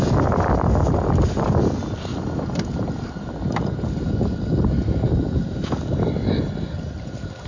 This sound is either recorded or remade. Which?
recorded